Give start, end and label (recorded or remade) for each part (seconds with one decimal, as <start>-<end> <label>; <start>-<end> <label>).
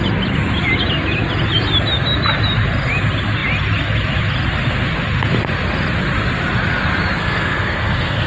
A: 0.0-7.2 recorded; 7.2-8.3 remade